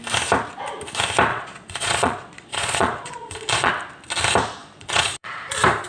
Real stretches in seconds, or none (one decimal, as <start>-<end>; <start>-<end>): 0.0-1.3; 3.7-4.6; 5.5-5.9